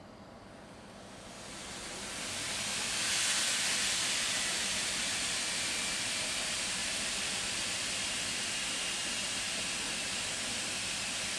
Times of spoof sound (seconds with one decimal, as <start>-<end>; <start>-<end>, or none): 0.0-11.4